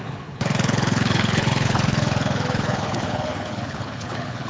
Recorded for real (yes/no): no